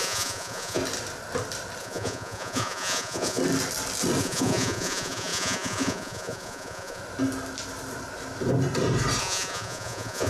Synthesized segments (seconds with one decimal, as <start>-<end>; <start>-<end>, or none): 0.0-0.8; 1.8-3.4; 4.2-7.0; 9.2-10.3

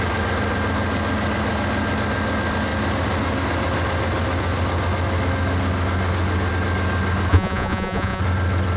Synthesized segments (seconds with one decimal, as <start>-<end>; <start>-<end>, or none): 7.3-8.2

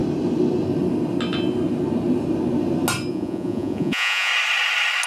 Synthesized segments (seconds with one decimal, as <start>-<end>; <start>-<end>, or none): 3.1-4.3

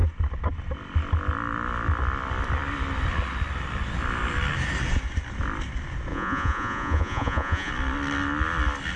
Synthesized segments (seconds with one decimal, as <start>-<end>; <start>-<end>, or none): 6.1-7.7

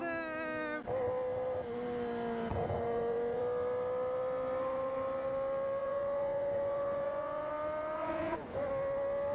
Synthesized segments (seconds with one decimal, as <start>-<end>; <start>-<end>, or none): 2.5-3.4; 5.8-7.5; 8.0-8.7

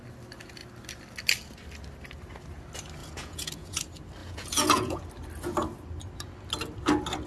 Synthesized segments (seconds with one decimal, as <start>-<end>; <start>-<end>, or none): 3.0-3.8; 4.2-5.0